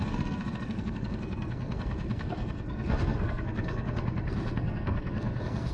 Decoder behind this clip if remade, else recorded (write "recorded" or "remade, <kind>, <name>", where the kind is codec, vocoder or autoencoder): remade, codec, SNAC